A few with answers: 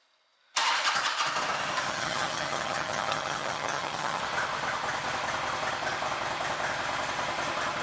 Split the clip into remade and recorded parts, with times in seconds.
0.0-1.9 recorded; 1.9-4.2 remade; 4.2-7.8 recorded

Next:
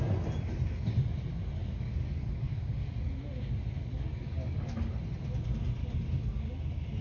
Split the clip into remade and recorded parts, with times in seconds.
0.0-1.6 recorded; 1.6-2.7 remade; 2.7-4.1 recorded; 4.1-4.9 remade; 4.9-5.8 recorded; 5.8-6.4 remade; 6.4-7.0 recorded

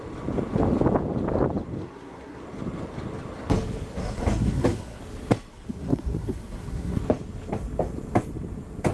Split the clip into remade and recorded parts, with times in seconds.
0.0-1.8 recorded; 1.8-2.4 remade; 2.4-3.9 recorded; 3.9-5.0 remade; 5.0-5.5 recorded; 5.5-7.0 remade; 7.0-8.9 recorded

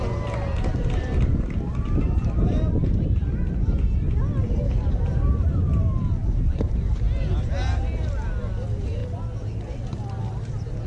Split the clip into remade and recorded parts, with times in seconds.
0.0-1.3 recorded; 1.3-4.0 remade; 4.0-4.4 recorded; 4.4-5.3 remade; 5.3-6.2 recorded; 6.2-7.6 remade; 7.6-10.9 recorded

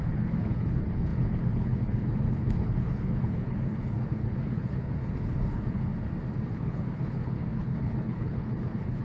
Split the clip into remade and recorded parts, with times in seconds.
0.0-5.9 remade; 5.9-6.5 recorded; 6.5-9.0 remade

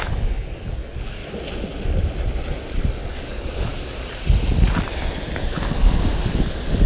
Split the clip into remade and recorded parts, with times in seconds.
0.0-1.2 remade; 1.2-3.1 recorded; 3.1-3.7 remade; 3.7-5.7 recorded; 5.7-6.9 remade

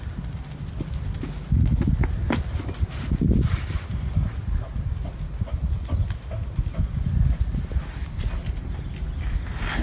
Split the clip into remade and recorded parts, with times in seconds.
0.0-9.8 recorded

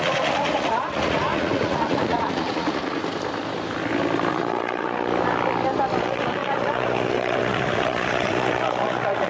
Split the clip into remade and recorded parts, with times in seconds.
0.0-3.0 remade; 3.0-4.3 recorded; 4.3-5.1 remade; 5.1-6.0 recorded; 6.0-9.3 remade